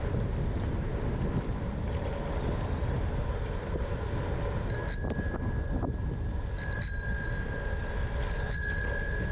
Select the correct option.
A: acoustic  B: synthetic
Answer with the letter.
A